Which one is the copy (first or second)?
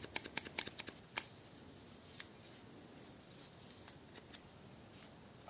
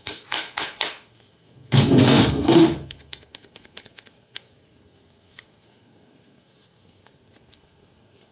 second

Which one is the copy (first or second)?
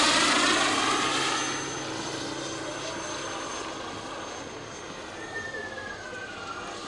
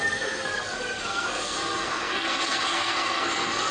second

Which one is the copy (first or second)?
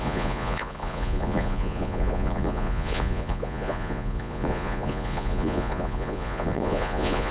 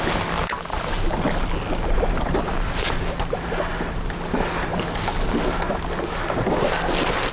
first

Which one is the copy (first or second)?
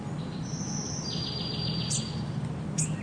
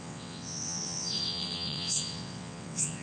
second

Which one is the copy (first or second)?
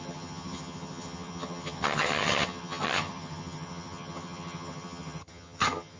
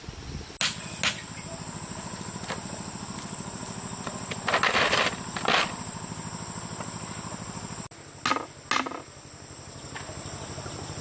first